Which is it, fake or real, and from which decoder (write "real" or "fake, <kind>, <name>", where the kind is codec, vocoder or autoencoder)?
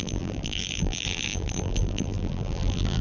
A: fake, vocoder, BigVGAN v2